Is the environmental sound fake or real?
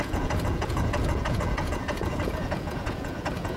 fake